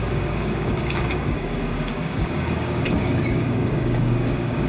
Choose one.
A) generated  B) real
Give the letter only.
A